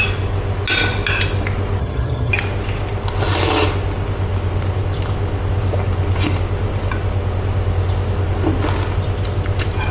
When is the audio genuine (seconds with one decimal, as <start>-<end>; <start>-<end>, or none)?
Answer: 0.0-1.8; 2.3-9.9